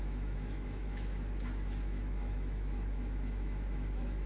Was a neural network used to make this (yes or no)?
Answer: yes